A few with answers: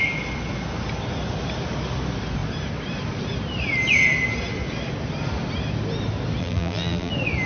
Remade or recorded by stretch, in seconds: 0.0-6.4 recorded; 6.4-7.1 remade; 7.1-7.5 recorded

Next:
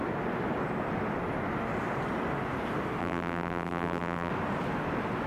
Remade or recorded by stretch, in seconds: 0.0-3.0 recorded; 3.0-4.3 remade; 4.3-5.3 recorded

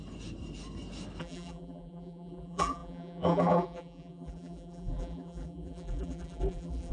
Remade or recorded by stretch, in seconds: 0.0-1.2 recorded; 1.2-6.9 remade

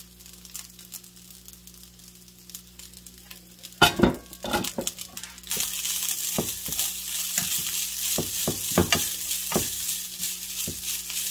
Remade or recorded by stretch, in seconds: 0.0-11.3 recorded

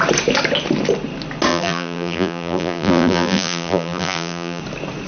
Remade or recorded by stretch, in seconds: 0.0-1.5 recorded; 1.5-4.6 remade; 4.6-5.1 recorded

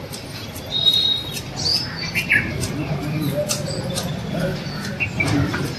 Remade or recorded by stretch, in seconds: 0.0-5.8 recorded

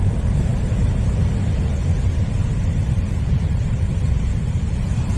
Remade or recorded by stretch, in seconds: 0.0-5.2 remade

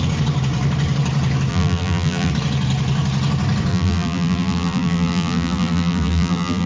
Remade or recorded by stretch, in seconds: 0.0-1.5 recorded; 1.5-2.3 remade; 2.3-3.7 recorded; 3.7-6.7 remade